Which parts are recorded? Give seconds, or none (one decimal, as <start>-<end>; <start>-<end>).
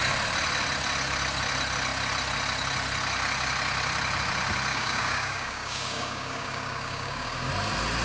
0.0-4.7; 7.5-8.0